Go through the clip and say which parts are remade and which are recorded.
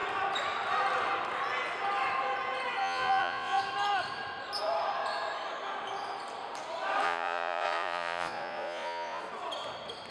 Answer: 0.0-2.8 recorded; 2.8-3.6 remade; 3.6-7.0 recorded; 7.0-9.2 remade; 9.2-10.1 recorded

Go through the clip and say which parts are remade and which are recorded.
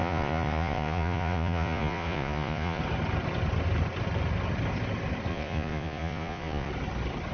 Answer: 0.0-2.8 remade; 2.8-5.3 recorded; 5.3-6.7 remade; 6.7-7.3 recorded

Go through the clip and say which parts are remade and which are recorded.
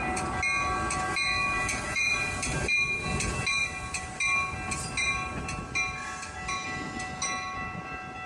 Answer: 0.0-1.6 recorded; 1.6-2.1 remade; 2.1-8.3 recorded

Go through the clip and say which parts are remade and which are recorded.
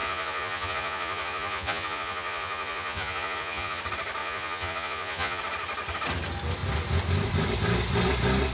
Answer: 0.0-3.8 remade; 3.8-4.2 recorded; 4.2-5.4 remade; 5.4-8.5 recorded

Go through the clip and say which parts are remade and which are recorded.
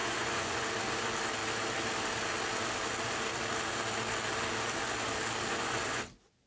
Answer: 0.0-0.7 remade; 0.7-5.5 recorded; 5.5-6.0 remade; 6.0-6.5 recorded